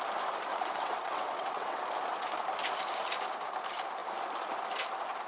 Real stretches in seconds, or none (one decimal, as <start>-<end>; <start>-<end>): 0.0-0.5; 1.8-5.3